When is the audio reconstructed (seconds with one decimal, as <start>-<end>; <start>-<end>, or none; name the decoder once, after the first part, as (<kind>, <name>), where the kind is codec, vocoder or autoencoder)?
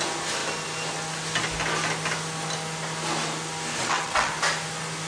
3.8-4.3 (vocoder, WaveNeXt)